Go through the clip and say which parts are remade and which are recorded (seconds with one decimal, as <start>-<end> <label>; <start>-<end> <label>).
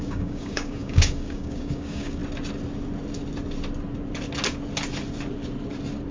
0.0-2.2 remade; 2.2-6.1 recorded